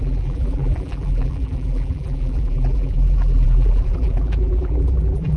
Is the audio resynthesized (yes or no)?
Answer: yes